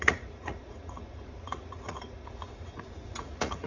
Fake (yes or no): yes